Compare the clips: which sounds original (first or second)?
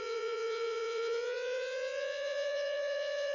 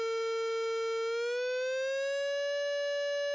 second